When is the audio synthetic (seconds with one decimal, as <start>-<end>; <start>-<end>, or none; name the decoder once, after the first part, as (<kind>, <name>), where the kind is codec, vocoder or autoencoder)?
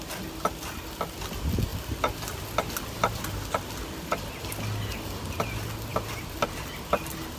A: 5.9-6.4 (vocoder, BigVGAN v2)